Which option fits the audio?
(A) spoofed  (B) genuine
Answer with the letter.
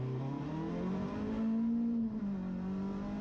B